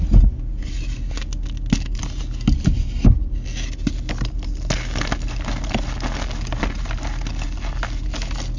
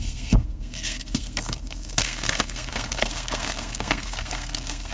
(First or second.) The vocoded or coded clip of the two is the second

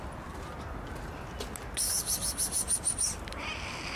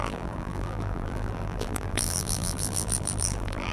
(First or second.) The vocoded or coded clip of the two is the second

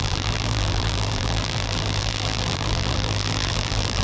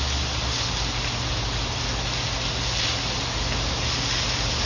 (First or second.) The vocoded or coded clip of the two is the first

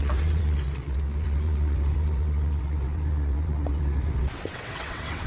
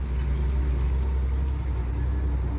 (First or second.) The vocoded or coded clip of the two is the first